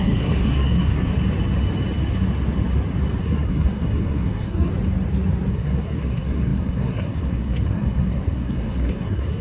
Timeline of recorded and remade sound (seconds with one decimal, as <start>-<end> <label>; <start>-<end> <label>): 0.0-1.1 remade; 1.1-3.2 recorded; 3.2-4.7 remade; 4.7-5.5 recorded; 5.5-9.4 remade